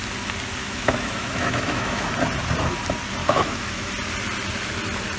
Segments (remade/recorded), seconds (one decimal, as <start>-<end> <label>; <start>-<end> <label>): 0.0-0.6 recorded; 0.6-2.1 remade; 2.1-3.2 recorded; 3.2-3.9 remade; 3.9-5.2 recorded